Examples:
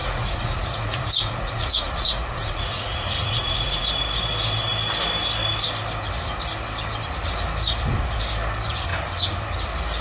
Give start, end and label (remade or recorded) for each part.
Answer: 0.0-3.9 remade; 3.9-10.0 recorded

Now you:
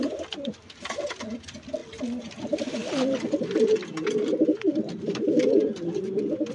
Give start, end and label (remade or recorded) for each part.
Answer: 0.0-6.5 remade

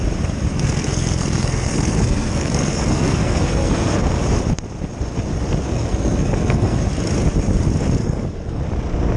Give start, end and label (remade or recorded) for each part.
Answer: 0.0-0.5 recorded; 0.5-4.2 remade; 4.2-5.6 recorded; 5.6-6.9 remade; 6.9-8.0 recorded; 8.0-8.6 remade; 8.6-9.2 recorded